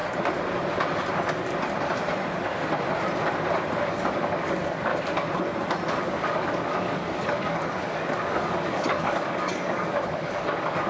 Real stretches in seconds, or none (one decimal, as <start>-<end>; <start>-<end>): 0.0-3.9; 4.9-6.0